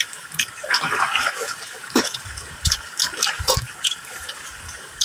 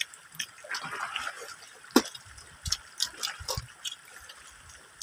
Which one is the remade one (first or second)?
first